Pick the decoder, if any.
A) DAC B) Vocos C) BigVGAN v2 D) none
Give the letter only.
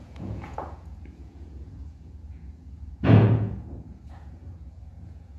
B